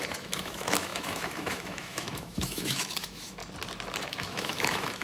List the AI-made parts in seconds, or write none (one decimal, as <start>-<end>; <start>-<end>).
0.0-3.4; 4.0-5.0